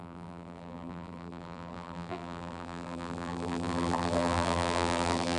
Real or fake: fake